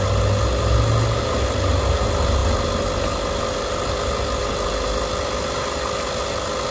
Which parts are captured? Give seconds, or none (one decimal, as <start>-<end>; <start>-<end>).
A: 0.0-6.7